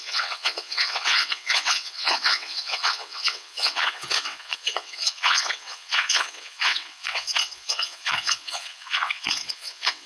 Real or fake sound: fake